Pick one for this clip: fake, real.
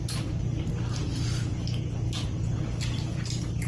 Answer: real